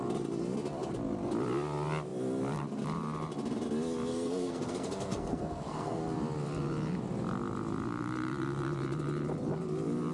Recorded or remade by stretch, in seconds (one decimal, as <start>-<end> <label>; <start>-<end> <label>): 0.0-4.1 recorded; 4.1-6.0 remade; 6.0-10.1 recorded